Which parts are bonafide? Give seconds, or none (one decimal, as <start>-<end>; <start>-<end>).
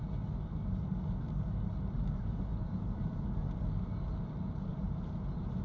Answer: 0.0-2.5; 3.4-4.7